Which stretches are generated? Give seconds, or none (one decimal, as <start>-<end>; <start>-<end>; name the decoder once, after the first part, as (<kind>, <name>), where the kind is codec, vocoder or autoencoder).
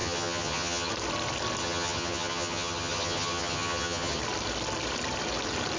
0.0-0.9 (vocoder, HiFi-GAN); 1.6-4.2